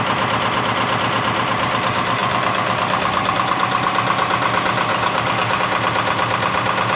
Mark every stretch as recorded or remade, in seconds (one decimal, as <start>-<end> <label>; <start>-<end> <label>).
0.0-4.9 recorded; 4.9-5.6 remade; 5.6-7.0 recorded